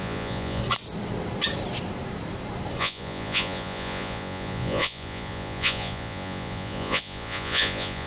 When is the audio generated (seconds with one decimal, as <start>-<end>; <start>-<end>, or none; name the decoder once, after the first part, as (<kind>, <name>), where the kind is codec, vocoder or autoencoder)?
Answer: 0.0-0.6 (vocoder, Vocos); 2.8-8.1